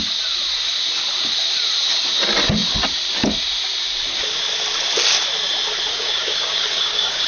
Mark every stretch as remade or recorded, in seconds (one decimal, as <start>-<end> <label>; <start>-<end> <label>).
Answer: 0.0-5.9 recorded; 5.9-7.3 remade